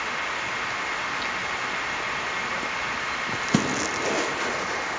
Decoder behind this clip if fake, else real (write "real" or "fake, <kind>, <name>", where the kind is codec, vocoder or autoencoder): real